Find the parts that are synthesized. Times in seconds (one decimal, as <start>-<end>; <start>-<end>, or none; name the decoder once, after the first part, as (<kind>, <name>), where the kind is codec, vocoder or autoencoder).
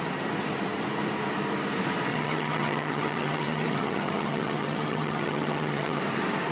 2.1-6.0 (vocoder, HiFi-GAN)